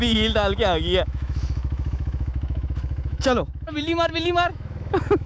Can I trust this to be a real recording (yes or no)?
no